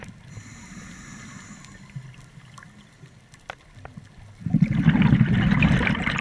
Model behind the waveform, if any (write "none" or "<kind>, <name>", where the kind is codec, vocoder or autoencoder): none